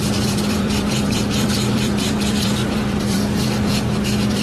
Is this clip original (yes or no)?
no